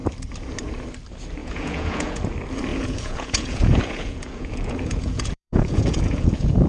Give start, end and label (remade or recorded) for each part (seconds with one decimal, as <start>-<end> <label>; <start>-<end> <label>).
0.0-1.4 recorded; 1.4-2.2 remade; 2.2-2.7 recorded; 2.7-6.7 remade